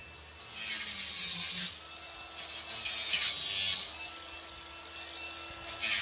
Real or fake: real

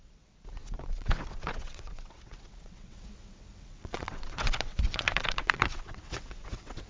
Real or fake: fake